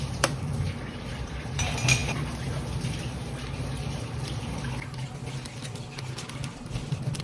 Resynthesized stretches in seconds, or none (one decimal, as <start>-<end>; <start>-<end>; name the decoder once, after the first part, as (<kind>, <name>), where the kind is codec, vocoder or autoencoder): 0.0-2.0 (vocoder, BigVGAN v2); 6.3-7.2